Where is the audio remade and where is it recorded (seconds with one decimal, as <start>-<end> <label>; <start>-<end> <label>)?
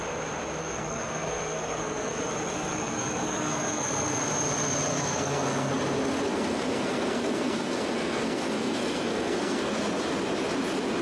0.0-0.6 recorded; 0.6-2.3 remade; 2.3-2.7 recorded; 2.7-4.2 remade; 4.2-4.9 recorded; 4.9-5.7 remade; 5.7-6.3 recorded; 6.3-9.7 remade; 9.7-11.0 recorded